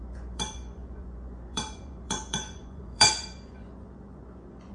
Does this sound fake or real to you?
fake